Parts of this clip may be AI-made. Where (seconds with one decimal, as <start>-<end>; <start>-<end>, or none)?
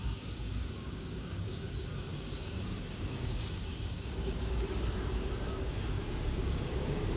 0.0-7.2